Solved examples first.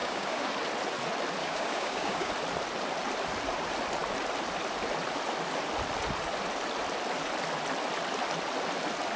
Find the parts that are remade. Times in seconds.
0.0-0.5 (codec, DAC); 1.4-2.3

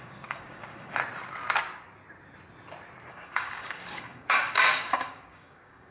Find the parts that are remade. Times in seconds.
0.0-1.0 (codec, DAC); 3.1-5.9

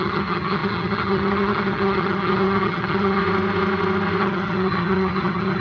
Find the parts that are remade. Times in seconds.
0.0-3.2 (vocoder, HiFi-GAN); 4.2-5.6

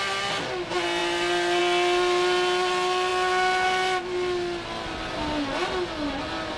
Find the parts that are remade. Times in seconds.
none